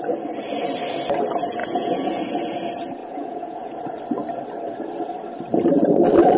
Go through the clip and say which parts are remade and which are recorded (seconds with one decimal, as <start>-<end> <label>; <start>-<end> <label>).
0.0-1.6 recorded; 1.6-2.2 remade; 2.2-3.0 recorded; 3.0-3.7 remade; 3.7-6.4 recorded